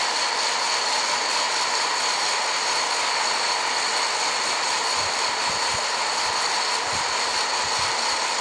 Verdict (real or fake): real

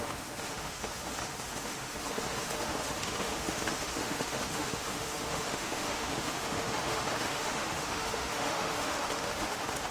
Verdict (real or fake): fake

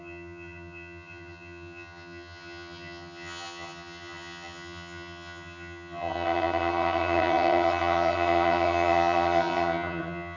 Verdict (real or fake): fake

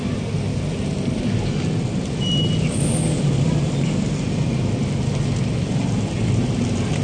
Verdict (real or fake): real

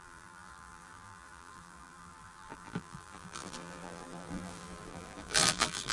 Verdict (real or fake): fake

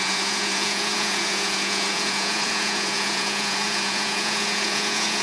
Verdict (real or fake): fake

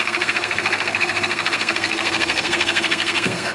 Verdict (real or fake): fake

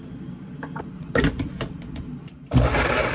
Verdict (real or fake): fake